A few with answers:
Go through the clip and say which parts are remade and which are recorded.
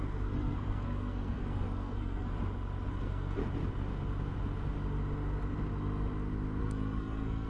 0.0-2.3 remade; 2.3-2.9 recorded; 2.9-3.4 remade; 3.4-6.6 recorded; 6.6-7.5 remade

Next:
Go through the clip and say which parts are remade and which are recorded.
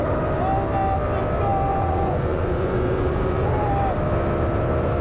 0.0-1.7 recorded; 1.7-3.5 remade; 3.5-5.0 recorded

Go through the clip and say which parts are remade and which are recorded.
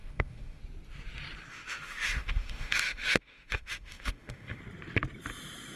0.0-0.6 remade; 0.6-1.5 recorded; 1.5-4.6 remade; 4.6-5.8 recorded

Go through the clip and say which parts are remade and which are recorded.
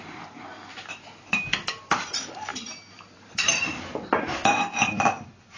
0.0-5.6 remade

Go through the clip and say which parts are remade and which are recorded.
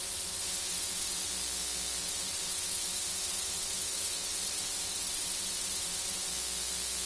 0.0-1.3 remade; 1.3-2.0 recorded; 2.0-6.3 remade; 6.3-7.1 recorded